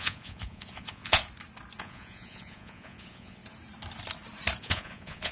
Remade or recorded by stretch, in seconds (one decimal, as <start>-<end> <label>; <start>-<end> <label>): 0.0-1.2 remade; 1.2-1.8 recorded; 1.8-3.4 remade; 3.4-4.6 recorded; 4.6-5.3 remade